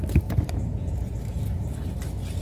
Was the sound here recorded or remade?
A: recorded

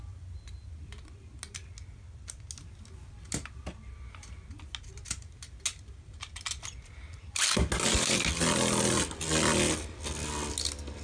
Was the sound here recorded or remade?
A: recorded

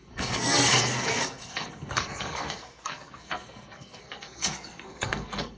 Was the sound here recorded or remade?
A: remade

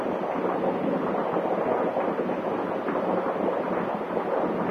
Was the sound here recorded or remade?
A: recorded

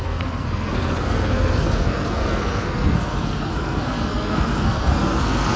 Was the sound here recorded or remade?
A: remade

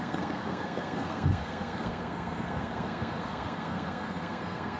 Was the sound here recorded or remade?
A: remade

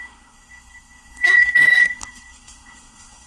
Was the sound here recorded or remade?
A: remade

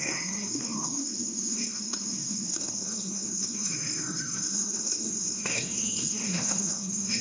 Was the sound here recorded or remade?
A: remade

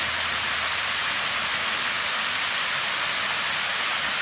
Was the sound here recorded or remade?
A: recorded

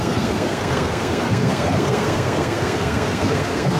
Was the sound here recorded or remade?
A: remade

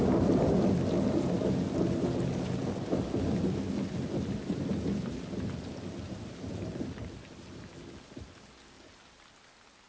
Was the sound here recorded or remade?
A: recorded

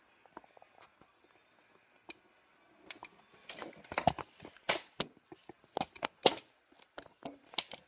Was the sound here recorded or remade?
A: recorded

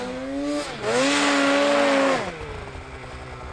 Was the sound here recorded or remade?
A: recorded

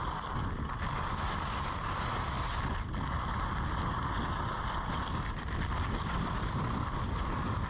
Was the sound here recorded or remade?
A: recorded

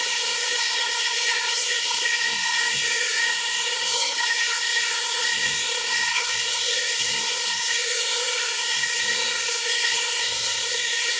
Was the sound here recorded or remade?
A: remade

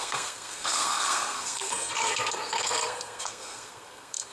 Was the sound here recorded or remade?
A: remade